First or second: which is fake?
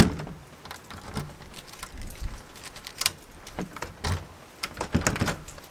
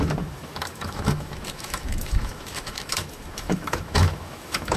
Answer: second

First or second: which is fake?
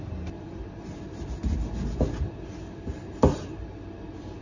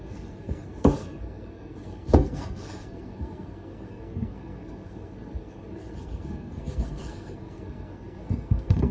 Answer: second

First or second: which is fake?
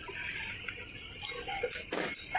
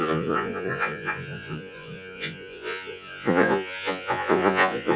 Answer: second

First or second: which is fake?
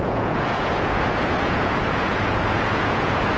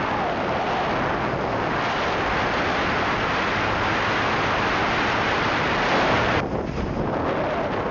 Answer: first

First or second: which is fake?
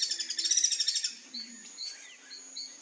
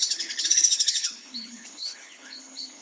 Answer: second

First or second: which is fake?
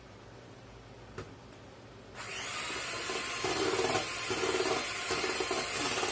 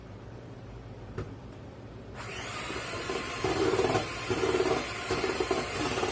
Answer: second